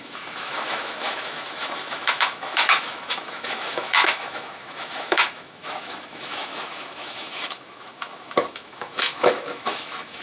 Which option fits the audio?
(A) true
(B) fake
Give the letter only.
B